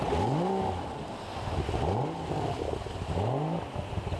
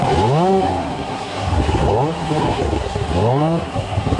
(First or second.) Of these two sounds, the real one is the first